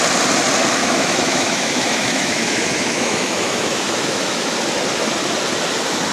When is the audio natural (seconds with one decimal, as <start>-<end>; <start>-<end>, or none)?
0.0-0.8; 4.5-6.1